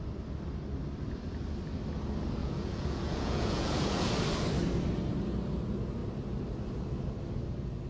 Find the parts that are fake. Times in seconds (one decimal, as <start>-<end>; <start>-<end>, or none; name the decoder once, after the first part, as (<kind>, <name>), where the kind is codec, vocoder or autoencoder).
2.4-4.1 (vocoder, Vocos)